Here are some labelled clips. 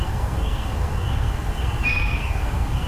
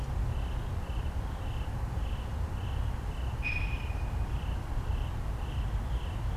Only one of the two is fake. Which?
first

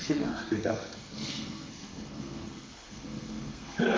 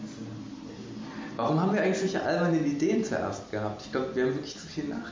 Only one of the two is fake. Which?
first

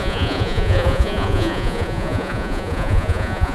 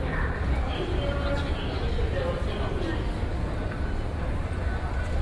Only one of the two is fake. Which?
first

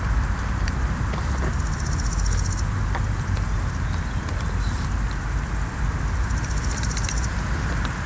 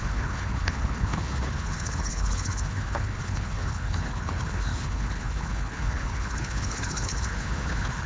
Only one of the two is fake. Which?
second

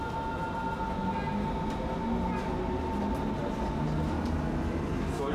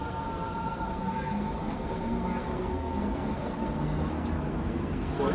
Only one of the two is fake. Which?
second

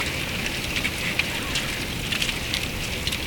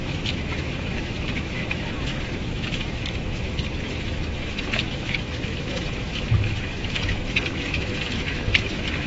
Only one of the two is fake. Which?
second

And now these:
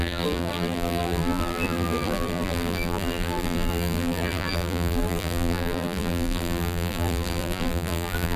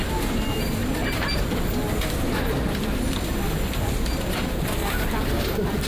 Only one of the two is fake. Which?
first